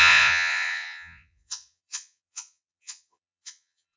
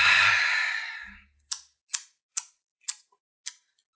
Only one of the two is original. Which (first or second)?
second